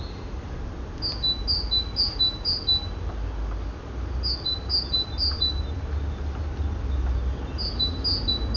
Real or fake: real